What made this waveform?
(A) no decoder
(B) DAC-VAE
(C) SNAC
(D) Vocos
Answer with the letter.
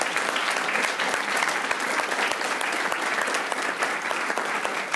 A